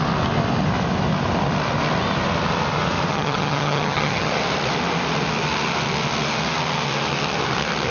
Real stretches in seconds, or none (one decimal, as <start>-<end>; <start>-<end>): 0.0-3.1; 4.3-7.9